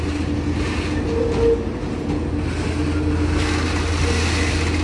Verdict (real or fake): real